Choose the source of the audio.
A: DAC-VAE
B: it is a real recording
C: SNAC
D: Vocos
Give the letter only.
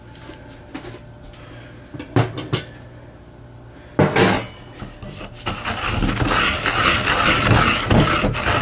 B